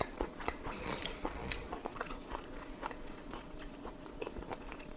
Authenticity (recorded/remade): remade